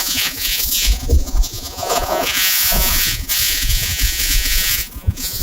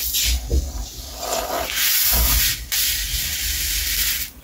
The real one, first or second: second